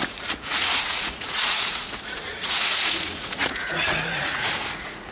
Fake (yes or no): yes